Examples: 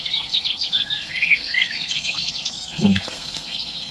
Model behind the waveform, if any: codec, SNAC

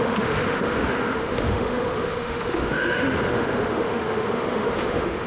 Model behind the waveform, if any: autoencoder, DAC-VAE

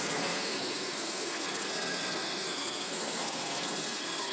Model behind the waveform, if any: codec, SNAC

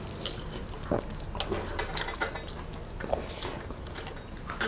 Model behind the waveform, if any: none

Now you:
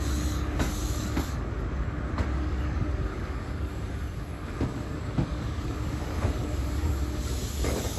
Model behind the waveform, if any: codec, DAC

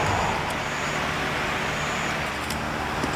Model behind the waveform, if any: none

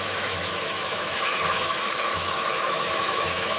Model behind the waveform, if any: autoencoder, DAC-VAE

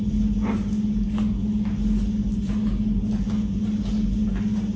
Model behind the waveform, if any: none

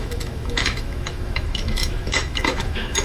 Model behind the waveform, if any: autoencoder, DAC-VAE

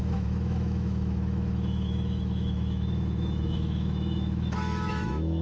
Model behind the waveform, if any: autoencoder, DAC-VAE